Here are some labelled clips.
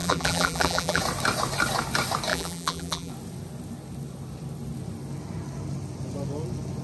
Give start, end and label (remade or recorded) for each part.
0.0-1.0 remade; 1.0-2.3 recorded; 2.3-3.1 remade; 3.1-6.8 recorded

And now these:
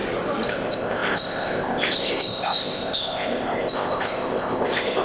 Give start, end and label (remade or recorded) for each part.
0.0-0.5 recorded; 0.5-5.0 remade

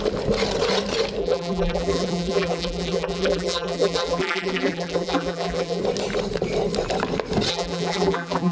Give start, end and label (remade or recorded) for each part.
0.0-1.2 recorded; 1.2-5.8 remade; 5.8-7.5 recorded; 7.5-8.5 remade

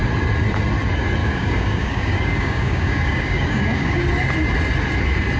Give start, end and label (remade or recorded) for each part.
0.0-1.2 recorded; 1.2-4.0 remade; 4.0-5.4 recorded

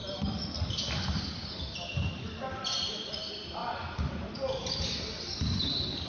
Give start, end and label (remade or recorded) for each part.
0.0-6.1 recorded

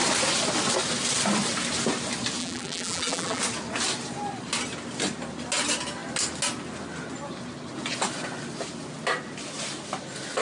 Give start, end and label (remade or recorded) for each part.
0.0-2.4 recorded; 2.4-3.4 remade; 3.4-10.4 recorded